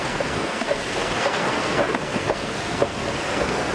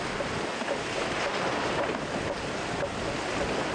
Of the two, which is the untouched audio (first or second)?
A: second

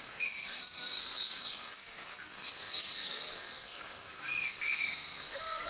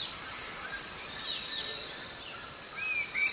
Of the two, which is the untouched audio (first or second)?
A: second